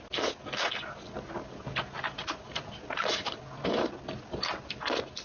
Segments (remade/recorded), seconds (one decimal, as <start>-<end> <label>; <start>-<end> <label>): 0.0-2.2 recorded; 2.2-2.7 remade; 2.7-5.2 recorded